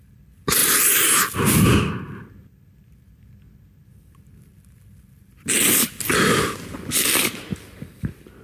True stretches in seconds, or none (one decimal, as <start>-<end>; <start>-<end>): 0.0-8.4